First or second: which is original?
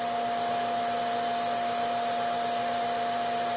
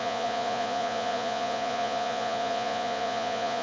first